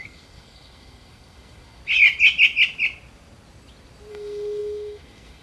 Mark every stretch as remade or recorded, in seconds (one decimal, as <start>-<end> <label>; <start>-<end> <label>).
0.0-1.8 remade; 1.8-4.1 recorded; 4.1-5.4 remade